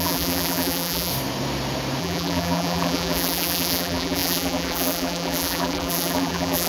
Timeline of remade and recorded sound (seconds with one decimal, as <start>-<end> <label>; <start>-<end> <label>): 0.0-1.1 remade; 1.1-2.0 recorded; 2.0-6.7 remade